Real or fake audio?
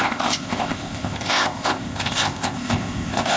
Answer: fake